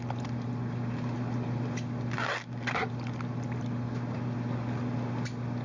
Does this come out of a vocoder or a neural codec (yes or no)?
no